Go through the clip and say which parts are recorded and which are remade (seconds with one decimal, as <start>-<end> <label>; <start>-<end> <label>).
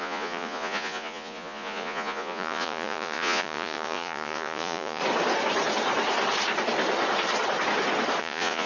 0.0-5.0 remade; 5.0-8.2 recorded; 8.2-8.7 remade